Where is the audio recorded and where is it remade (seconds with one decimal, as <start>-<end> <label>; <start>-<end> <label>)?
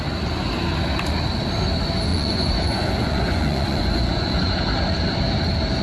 0.0-2.1 recorded; 2.1-4.5 remade; 4.5-5.8 recorded